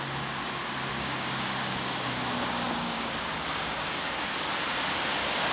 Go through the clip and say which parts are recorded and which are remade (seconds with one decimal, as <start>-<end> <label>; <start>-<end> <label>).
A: 0.0-0.9 recorded; 0.9-4.2 remade; 4.2-5.5 recorded